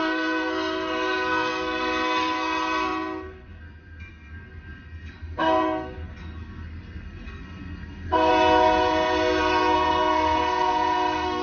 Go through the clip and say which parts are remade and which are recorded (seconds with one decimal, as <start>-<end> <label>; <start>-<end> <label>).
0.0-8.3 remade; 8.3-9.4 recorded; 9.4-11.4 remade